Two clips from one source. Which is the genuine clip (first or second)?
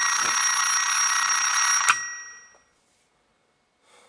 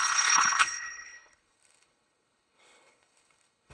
first